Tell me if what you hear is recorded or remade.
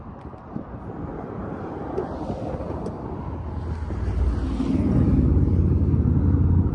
recorded